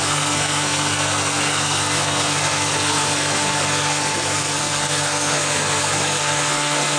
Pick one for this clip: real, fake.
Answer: fake